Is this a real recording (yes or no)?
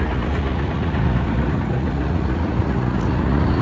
no